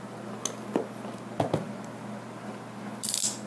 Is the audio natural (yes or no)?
yes